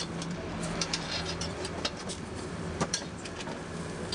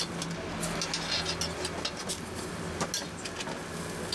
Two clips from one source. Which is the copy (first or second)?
first